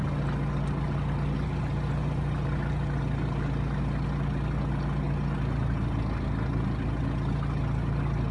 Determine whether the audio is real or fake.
real